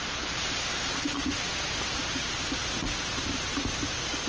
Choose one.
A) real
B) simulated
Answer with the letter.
A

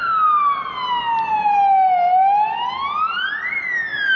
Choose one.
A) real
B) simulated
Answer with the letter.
A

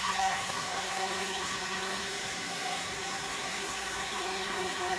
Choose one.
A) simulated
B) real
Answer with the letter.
A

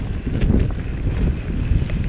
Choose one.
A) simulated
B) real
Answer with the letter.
B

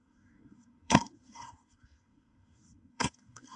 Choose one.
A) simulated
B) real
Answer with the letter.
A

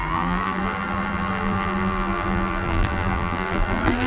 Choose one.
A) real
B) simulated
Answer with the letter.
B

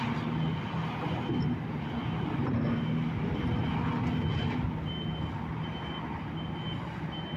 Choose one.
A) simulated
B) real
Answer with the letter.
B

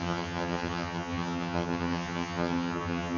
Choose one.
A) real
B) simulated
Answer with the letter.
B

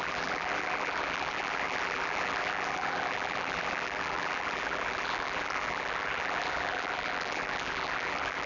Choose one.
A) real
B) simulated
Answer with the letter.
B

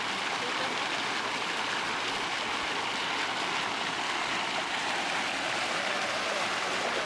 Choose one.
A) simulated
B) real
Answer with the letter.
B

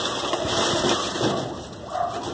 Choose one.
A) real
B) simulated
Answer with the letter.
A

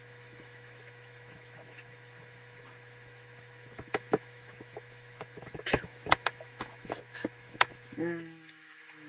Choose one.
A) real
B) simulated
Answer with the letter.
B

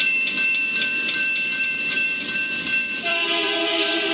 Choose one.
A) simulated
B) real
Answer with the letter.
A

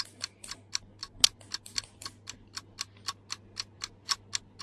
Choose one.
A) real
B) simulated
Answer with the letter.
A